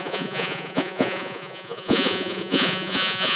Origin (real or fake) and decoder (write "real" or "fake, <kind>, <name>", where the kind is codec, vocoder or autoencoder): fake, vocoder, Vocos